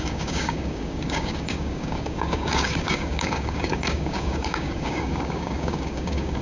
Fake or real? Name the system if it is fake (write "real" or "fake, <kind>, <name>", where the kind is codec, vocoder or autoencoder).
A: fake, codec, DAC